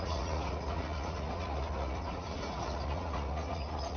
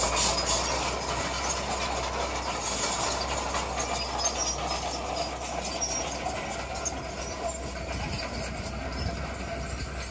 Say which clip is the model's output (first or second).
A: first